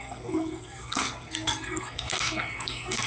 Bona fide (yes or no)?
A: no